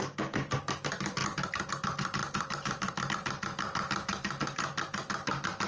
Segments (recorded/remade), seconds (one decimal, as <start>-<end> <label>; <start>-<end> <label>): 0.0-2.2 recorded; 2.2-3.1 remade; 3.1-5.7 recorded